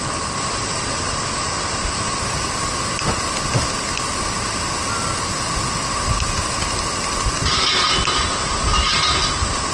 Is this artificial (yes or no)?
no